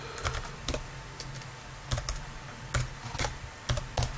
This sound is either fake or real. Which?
real